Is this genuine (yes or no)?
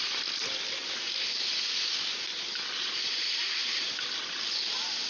yes